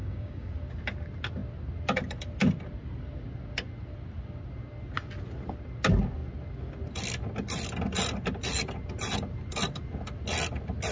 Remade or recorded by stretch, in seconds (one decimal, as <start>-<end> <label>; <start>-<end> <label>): 0.0-0.5 remade; 0.5-10.9 recorded

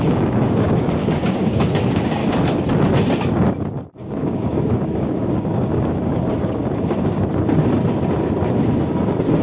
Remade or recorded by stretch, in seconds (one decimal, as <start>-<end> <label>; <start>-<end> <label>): 0.0-2.2 remade; 2.2-4.0 recorded; 4.0-6.6 remade; 6.6-9.4 recorded